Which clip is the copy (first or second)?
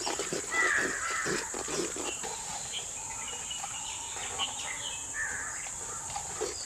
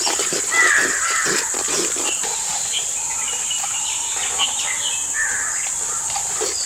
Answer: second